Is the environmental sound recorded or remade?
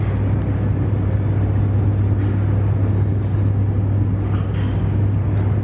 recorded